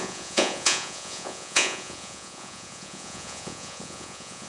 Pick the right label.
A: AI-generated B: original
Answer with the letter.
A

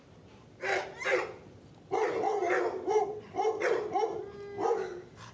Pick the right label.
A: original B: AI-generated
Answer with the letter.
A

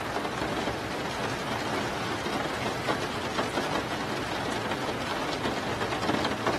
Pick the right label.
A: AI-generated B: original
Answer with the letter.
B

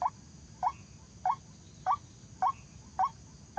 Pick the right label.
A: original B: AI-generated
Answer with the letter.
A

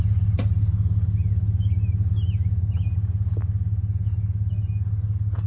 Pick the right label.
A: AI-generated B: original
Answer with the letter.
B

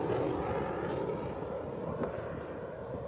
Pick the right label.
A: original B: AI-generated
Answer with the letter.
B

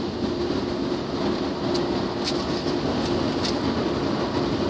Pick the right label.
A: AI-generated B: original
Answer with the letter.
B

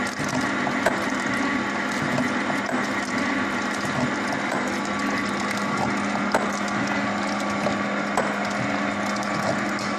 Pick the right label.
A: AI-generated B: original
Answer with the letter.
B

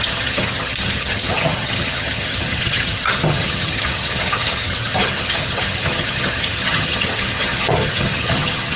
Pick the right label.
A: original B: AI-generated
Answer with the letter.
B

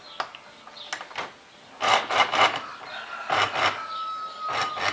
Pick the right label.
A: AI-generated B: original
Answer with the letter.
B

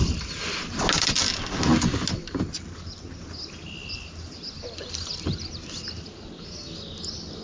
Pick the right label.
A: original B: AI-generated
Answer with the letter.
A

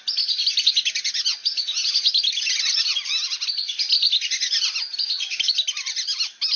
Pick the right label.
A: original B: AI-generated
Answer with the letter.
A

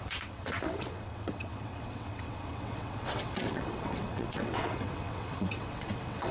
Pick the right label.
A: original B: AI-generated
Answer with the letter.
B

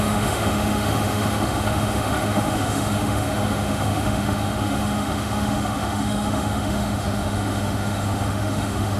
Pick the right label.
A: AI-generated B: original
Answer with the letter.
A